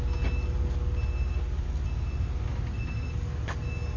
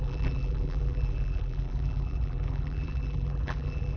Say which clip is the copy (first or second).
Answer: second